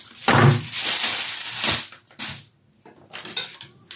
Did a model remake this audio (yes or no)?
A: no